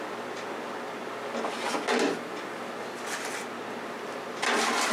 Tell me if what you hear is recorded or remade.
recorded